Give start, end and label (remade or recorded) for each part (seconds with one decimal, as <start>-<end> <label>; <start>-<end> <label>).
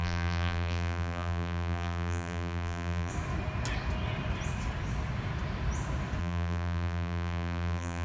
0.0-3.1 remade; 3.1-6.2 recorded; 6.2-8.0 remade